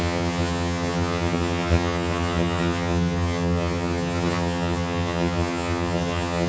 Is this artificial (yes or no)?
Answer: yes